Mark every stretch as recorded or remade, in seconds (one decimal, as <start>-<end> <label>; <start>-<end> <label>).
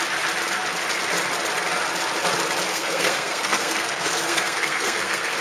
0.0-2.7 recorded; 2.7-5.4 remade